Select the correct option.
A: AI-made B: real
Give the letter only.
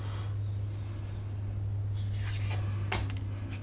B